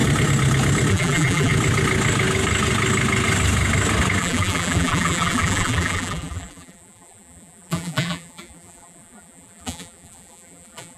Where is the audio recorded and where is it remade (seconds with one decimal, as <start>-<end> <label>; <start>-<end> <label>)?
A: 0.0-0.9 recorded; 0.9-1.5 remade; 1.5-4.2 recorded; 4.2-11.0 remade